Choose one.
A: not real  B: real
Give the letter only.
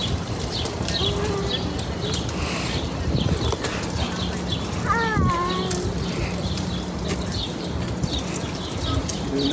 B